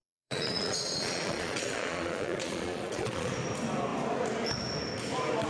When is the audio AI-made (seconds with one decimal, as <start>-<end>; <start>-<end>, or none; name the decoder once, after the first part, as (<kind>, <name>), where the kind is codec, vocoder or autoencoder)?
0.0-3.3 (vocoder, Vocos)